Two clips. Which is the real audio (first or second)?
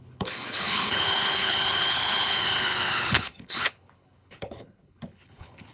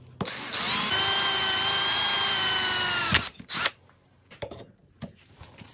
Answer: second